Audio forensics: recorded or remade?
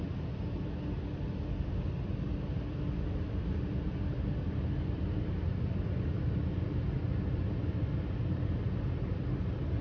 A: recorded